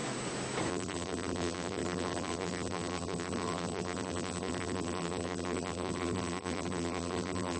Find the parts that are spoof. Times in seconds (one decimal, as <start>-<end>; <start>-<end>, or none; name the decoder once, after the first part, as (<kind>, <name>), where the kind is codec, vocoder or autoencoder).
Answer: 0.7-7.6 (vocoder, BigVGAN v2)